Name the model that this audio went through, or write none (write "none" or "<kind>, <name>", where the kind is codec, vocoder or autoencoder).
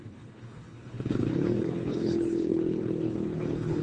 codec, HILCodec